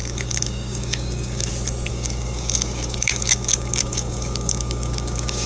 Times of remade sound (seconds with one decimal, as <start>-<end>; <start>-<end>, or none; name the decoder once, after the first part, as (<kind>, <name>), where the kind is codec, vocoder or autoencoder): 0.0-1.5 (codec, DAC); 1.9-5.5